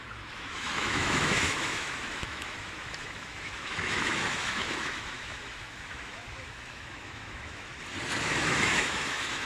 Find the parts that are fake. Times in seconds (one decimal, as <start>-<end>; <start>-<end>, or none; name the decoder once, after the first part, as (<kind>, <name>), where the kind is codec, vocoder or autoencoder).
0.0-7.7 (autoencoder, DAC-VAE); 8.2-9.5